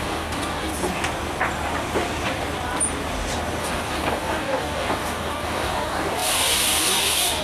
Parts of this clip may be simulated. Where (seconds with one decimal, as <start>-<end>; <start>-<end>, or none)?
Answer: 0.0-0.7; 3.6-7.4